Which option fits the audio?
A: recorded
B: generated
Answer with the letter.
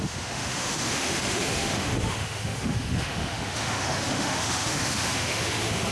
B